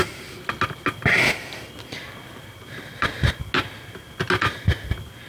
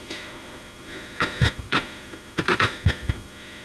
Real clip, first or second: first